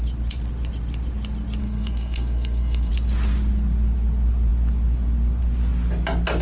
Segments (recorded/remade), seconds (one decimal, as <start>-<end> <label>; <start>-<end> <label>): 0.0-1.6 recorded; 1.6-2.9 remade; 2.9-6.4 recorded